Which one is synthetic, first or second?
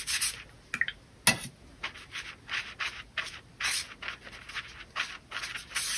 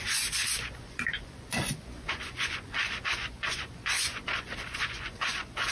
second